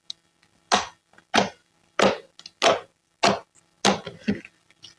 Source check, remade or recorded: recorded